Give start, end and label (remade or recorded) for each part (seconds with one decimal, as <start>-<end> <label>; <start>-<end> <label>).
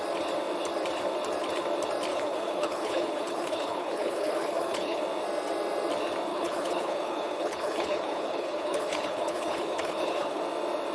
0.0-2.1 recorded; 2.1-5.0 remade; 5.0-6.3 recorded; 6.3-10.4 remade; 10.4-10.9 recorded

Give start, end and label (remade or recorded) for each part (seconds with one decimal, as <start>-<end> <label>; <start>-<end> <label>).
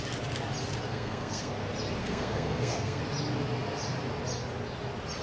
0.0-0.9 recorded; 0.9-1.5 remade; 1.5-2.0 recorded; 2.0-3.0 remade; 3.0-5.2 recorded